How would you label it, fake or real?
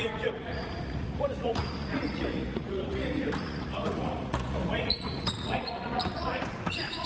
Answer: fake